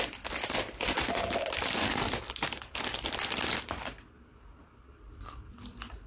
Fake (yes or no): no